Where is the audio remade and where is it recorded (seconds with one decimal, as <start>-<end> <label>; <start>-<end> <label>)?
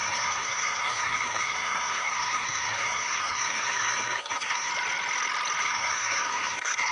0.0-4.7 remade; 4.7-5.6 recorded; 5.6-6.9 remade